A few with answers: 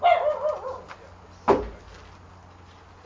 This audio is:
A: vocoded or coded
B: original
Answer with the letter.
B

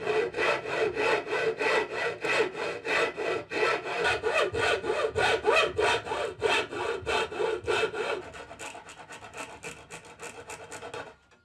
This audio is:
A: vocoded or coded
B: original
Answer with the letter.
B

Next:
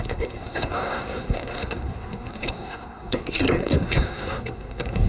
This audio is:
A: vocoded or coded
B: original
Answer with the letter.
A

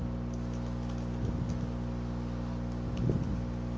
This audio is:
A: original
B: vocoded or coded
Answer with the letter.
A